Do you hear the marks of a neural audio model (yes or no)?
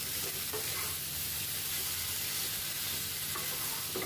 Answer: no